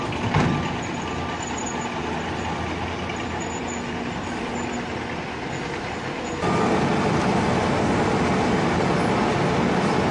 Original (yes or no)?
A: yes